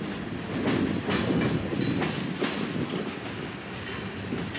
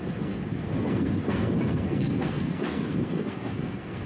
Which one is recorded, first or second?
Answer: first